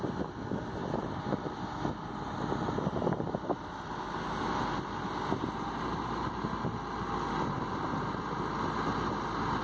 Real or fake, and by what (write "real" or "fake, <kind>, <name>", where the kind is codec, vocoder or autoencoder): real